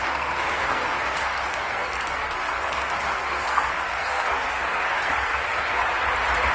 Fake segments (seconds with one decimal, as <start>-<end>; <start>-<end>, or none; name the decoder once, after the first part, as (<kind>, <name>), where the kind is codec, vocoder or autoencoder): 0.0-5.8 (codec, SNAC)